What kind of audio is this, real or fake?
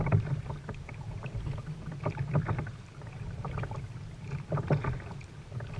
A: real